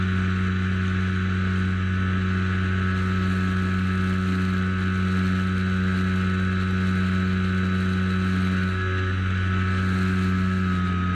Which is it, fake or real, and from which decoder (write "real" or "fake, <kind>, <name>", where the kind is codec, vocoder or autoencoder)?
real